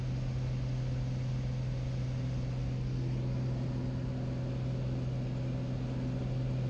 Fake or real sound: real